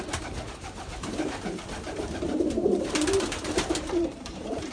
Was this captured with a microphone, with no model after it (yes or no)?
no